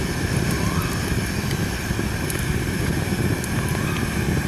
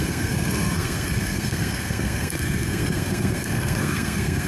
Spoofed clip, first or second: second